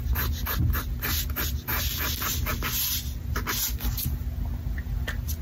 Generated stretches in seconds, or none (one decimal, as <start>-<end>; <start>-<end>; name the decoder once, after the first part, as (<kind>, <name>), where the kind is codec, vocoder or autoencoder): none